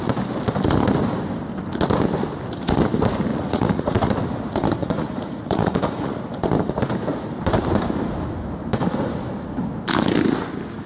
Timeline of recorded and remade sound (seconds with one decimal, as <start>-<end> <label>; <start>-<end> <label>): 0.0-3.3 recorded; 3.3-4.1 remade; 4.1-4.8 recorded; 4.8-6.2 remade; 6.2-10.9 recorded